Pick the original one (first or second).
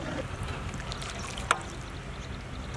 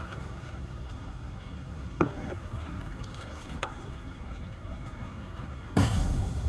first